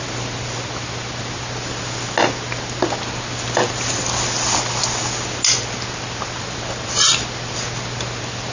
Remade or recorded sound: recorded